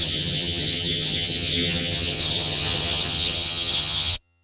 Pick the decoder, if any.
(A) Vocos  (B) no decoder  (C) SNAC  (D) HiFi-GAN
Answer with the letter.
D